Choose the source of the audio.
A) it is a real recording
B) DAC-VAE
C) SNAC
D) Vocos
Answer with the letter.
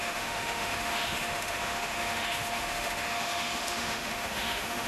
B